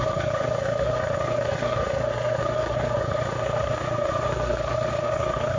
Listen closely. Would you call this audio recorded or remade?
remade